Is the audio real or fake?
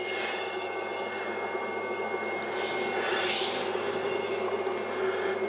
real